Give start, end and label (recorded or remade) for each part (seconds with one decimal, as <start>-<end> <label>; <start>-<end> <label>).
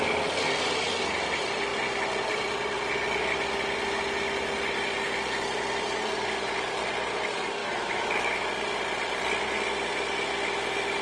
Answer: 0.0-7.6 recorded; 7.6-8.5 remade; 8.5-11.0 recorded